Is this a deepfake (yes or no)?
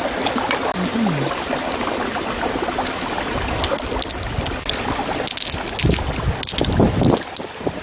no